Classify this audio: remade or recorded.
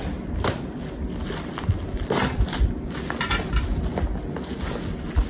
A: recorded